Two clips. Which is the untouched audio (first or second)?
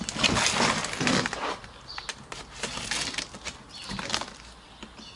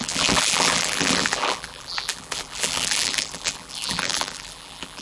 first